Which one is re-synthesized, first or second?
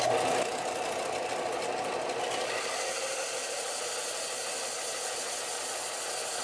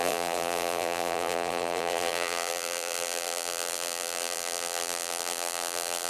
second